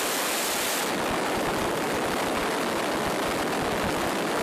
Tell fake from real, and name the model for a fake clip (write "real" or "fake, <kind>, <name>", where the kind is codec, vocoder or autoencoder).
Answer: real